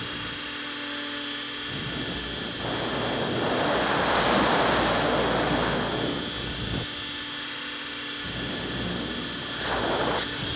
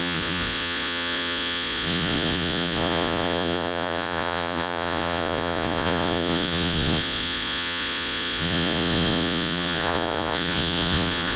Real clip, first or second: first